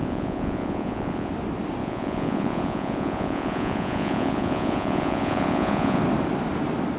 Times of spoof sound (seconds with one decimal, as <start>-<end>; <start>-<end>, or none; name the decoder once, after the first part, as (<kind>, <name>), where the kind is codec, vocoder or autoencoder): 0.0-1.3 (vocoder, Vocos); 1.8-6.0